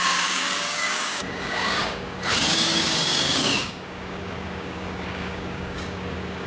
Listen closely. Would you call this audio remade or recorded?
remade